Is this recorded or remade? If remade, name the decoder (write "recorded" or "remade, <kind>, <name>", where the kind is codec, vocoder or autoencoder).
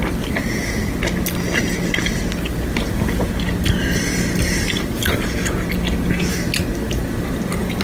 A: recorded